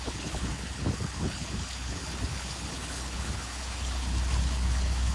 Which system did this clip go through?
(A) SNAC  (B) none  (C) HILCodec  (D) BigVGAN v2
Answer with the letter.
C